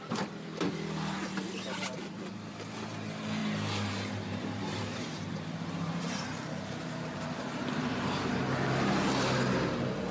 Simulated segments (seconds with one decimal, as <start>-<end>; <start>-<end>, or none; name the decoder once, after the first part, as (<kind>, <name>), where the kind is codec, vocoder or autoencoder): 3.4-8.4 (vocoder, BigVGAN v2)

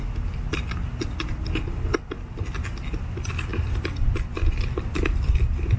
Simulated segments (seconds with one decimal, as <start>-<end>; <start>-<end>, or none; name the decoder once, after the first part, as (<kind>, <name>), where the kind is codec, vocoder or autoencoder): 3.5-4.1 (vocoder, BigVGAN v2)

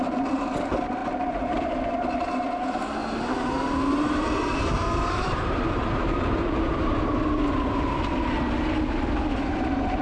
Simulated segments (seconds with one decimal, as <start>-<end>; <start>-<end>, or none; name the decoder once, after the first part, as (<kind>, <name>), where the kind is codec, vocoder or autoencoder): 3.0-7.1 (vocoder, BigVGAN v2)

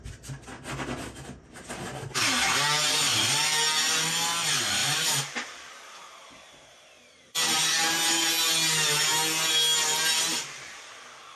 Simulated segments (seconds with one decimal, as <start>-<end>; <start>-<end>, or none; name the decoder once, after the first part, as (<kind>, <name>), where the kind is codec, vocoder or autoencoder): 4.8-8.3 (vocoder, BigVGAN v2); 10.3-10.9